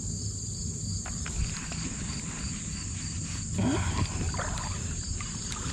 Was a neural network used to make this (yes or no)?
no